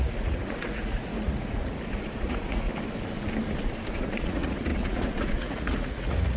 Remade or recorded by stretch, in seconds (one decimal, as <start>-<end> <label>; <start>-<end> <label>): 0.0-2.7 remade; 2.7-3.9 recorded; 3.9-6.4 remade